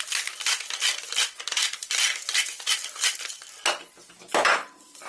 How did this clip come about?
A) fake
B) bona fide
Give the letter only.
B